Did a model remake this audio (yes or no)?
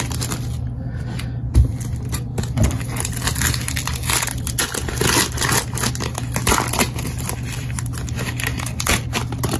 no